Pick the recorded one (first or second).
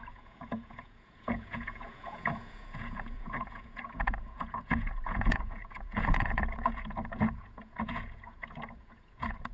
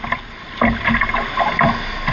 second